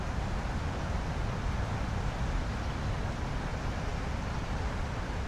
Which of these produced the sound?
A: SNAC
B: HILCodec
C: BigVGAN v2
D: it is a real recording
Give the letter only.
D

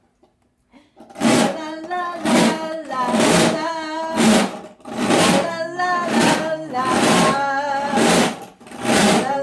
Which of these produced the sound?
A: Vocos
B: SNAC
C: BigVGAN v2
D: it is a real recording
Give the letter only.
D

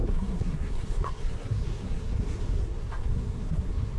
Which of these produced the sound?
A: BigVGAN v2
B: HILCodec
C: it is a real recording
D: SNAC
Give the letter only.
D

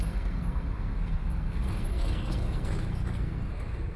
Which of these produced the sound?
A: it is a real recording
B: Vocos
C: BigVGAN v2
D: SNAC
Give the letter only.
D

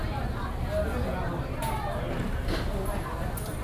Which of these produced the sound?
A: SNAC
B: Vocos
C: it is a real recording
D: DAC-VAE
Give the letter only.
C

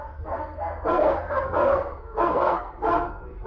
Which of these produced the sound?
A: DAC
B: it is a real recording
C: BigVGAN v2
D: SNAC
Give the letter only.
D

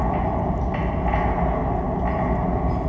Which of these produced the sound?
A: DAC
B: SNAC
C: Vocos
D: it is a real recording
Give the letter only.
D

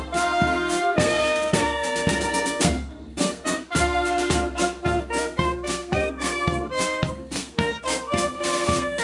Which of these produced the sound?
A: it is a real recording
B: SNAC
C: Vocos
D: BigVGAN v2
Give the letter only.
B